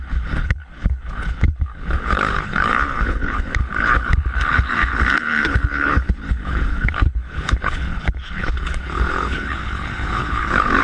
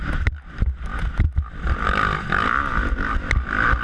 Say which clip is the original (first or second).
second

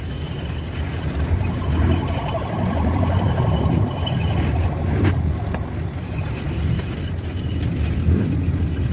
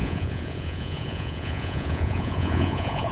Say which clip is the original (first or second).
first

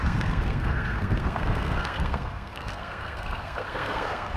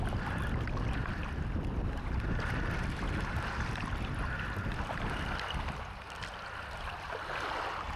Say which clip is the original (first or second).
second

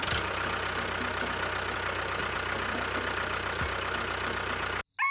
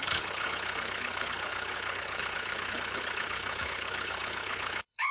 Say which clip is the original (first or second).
first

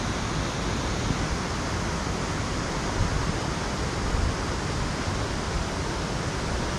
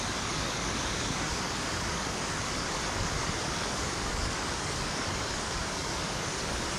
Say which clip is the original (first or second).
first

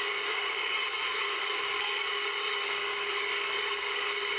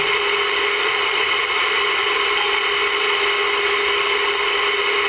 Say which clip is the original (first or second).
second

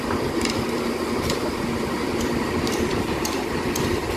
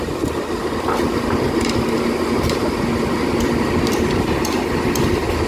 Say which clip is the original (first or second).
second